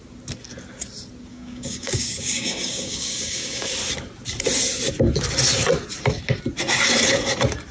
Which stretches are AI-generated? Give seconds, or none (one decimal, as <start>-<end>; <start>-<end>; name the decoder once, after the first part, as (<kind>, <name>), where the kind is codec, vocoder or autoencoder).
1.3-3.7 (codec, DAC)